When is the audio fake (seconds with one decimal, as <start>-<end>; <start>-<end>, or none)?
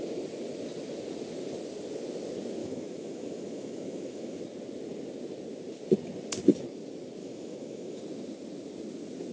2.6-4.4; 7.2-8.0